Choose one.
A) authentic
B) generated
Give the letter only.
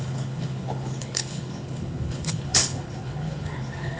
B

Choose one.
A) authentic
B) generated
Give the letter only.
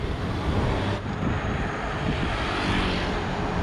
A